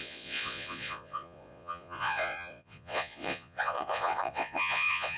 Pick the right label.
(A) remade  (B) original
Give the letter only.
A